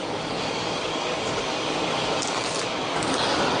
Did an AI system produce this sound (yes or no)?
yes